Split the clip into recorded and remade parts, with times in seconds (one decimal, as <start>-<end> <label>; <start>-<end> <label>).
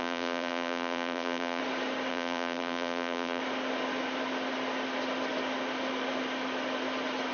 0.0-1.6 remade; 1.6-2.1 recorded; 2.1-3.4 remade; 3.4-7.3 recorded